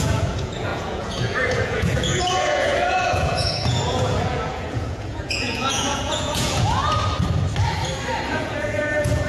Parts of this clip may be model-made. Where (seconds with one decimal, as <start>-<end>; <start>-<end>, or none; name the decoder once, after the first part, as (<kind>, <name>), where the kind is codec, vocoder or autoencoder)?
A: 0.0-6.8 (vocoder, Vocos); 8.3-9.3